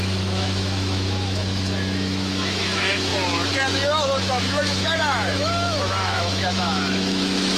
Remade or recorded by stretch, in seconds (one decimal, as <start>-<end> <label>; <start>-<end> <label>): 0.0-3.1 remade; 3.1-4.3 recorded; 4.3-7.6 remade